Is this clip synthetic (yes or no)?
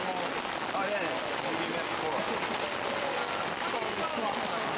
no